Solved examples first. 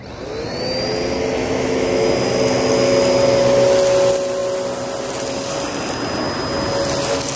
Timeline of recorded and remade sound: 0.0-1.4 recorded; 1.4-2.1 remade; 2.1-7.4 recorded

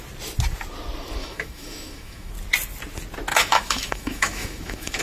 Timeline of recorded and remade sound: 0.0-1.2 recorded; 1.2-2.3 remade; 2.3-3.3 recorded; 3.3-5.0 remade

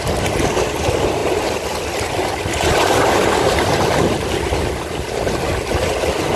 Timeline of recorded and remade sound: 0.0-6.4 recorded